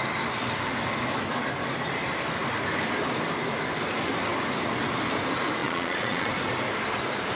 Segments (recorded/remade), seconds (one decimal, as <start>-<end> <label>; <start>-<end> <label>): 0.0-5.6 recorded; 5.6-6.3 remade; 6.3-7.4 recorded

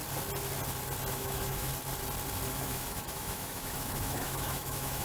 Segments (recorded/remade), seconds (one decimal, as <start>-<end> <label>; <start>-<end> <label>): 0.0-1.1 recorded; 1.1-1.7 remade; 1.7-2.5 recorded; 2.5-5.0 remade